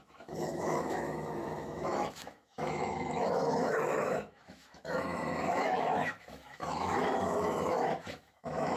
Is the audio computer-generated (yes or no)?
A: yes